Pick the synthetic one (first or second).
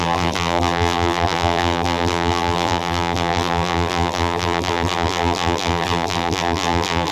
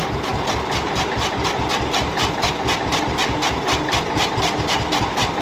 first